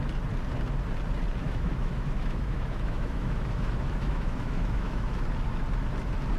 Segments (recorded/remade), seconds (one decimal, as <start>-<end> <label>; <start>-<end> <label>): 0.0-1.4 recorded; 1.4-5.2 remade; 5.2-6.4 recorded